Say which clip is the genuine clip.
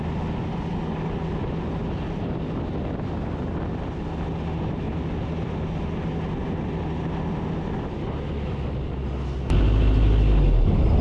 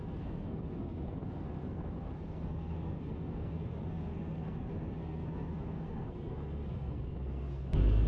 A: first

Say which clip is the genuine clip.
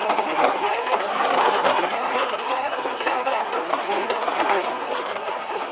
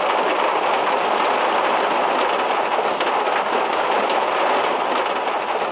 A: second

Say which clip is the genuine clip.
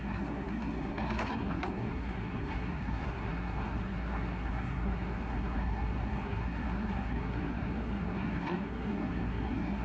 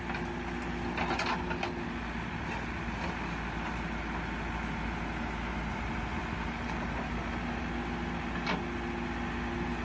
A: second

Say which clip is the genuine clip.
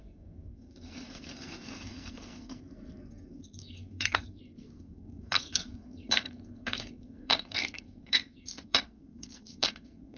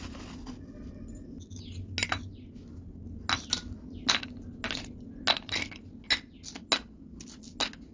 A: second